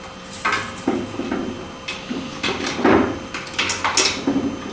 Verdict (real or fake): real